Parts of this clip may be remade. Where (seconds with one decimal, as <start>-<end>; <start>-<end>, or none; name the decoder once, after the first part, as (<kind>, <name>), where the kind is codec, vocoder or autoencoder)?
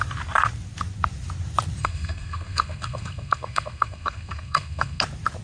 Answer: 1.8-5.0 (codec, SNAC)